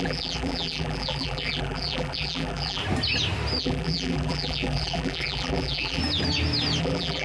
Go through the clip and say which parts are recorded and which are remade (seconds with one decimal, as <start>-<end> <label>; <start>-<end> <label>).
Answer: 0.0-2.8 remade; 2.8-3.6 recorded; 3.6-6.0 remade; 6.0-6.8 recorded; 6.8-7.2 remade